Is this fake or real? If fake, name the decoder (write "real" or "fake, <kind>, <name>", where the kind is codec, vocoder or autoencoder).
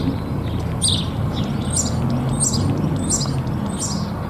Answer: real